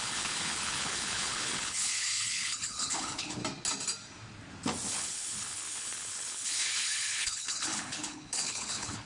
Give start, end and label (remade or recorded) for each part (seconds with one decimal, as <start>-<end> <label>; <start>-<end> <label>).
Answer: 0.0-3.4 remade; 3.4-4.9 recorded; 4.9-9.1 remade